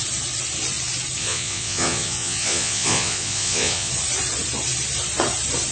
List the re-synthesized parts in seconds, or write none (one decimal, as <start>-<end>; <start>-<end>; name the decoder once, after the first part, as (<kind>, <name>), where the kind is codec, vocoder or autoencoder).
1.2-3.9 (vocoder, Vocos)